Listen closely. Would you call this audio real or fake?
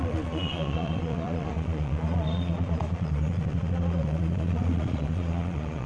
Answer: fake